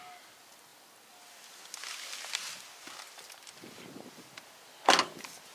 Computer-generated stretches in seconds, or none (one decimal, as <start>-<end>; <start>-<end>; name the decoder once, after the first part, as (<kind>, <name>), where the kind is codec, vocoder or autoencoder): none